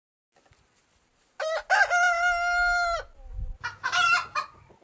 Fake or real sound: real